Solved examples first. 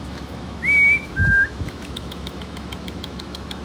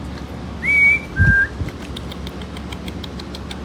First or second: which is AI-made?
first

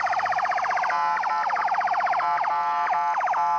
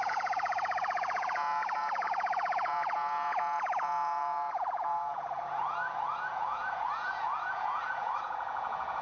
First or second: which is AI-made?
second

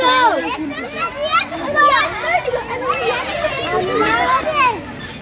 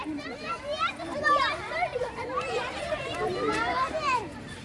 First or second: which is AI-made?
second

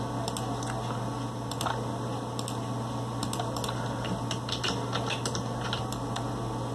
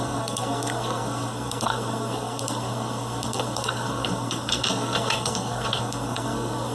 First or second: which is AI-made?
second